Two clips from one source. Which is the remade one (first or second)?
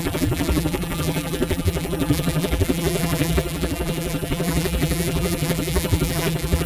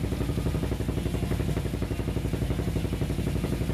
first